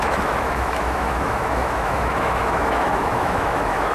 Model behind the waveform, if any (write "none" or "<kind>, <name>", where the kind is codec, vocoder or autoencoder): autoencoder, DAC-VAE